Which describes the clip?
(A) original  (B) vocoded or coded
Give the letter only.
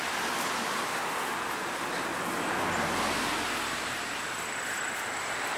A